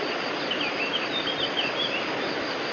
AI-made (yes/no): no